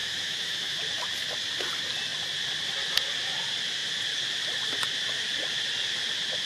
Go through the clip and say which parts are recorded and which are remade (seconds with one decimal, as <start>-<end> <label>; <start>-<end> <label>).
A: 0.0-0.8 remade; 0.8-6.5 recorded